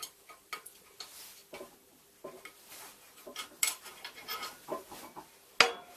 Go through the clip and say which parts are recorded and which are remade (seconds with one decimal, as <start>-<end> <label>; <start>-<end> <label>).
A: 0.0-0.8 remade; 0.8-6.0 recorded